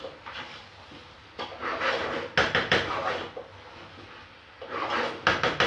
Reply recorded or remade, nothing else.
recorded